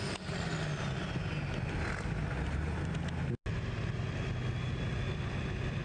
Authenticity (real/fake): real